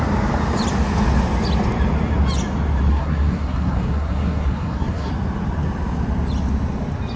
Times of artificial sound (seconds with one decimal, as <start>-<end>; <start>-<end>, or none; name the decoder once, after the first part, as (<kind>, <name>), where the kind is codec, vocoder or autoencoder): 2.9-5.1 (codec, SNAC)